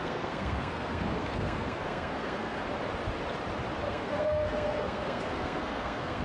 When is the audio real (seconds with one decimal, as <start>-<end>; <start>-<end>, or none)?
2.6-3.9